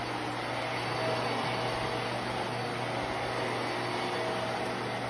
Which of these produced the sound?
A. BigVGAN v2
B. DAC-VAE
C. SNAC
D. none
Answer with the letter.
D